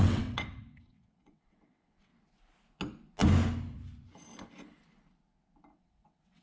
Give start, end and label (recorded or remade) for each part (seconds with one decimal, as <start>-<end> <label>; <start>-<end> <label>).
0.0-2.1 remade; 2.1-5.7 recorded; 5.7-6.4 remade